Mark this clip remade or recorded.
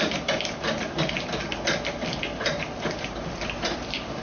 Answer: remade